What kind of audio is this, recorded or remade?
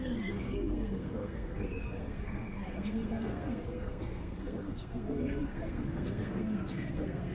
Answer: remade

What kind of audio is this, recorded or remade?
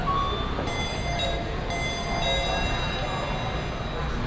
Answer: recorded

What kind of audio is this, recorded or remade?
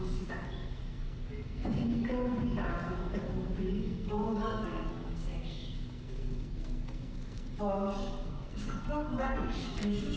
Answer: remade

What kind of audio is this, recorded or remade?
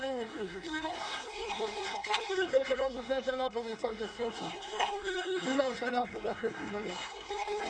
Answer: remade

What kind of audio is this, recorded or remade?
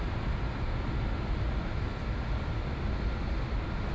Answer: recorded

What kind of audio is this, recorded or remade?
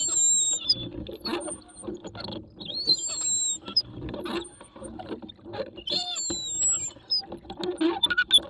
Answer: recorded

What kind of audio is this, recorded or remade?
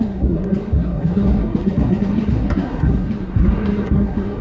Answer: remade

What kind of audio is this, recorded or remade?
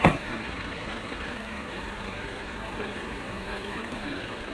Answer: remade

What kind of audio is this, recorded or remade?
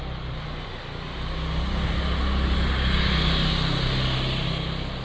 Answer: recorded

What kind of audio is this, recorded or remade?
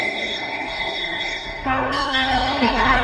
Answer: remade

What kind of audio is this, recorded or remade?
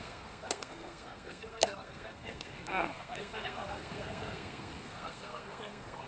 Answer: remade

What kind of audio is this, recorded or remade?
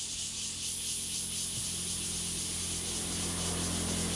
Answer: recorded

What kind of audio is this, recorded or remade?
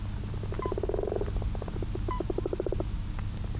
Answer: recorded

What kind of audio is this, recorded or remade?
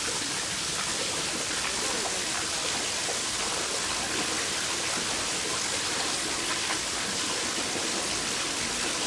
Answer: recorded